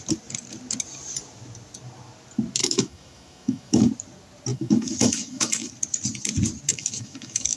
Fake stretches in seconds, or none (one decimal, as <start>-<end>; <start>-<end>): 2.6-3.9; 4.5-5.7; 6.7-7.6